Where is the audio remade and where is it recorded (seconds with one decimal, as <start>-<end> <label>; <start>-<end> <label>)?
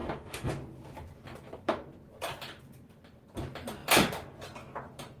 0.0-0.5 remade; 0.5-5.2 recorded